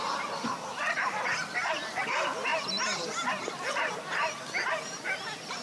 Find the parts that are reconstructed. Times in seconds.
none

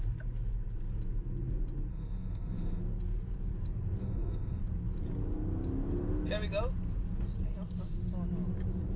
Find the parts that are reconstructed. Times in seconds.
1.9-2.8 (autoencoder, DAC-VAE); 4.0-4.6

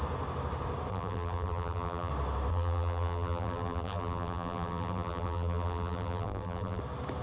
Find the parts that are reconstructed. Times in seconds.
0.9-2.1 (vocoder, BigVGAN v2); 2.5-6.8

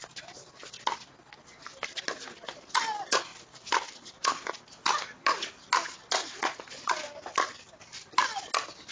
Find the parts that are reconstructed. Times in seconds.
6.2-6.9 (vocoder, Vocos)

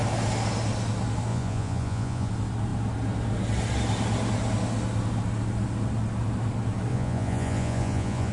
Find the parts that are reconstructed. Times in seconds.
1.3-2.3 (vocoder, Vocos); 6.9-8.3